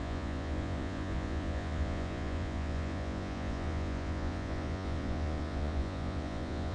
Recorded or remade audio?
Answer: remade